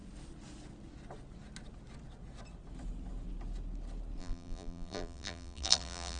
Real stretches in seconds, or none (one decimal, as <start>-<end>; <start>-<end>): 0.0-4.2